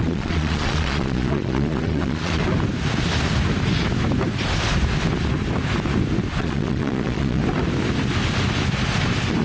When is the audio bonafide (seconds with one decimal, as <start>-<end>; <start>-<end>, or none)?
2.4-6.4; 7.4-9.4